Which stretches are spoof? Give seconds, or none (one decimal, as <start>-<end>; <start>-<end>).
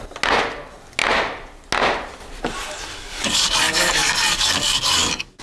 2.9-5.4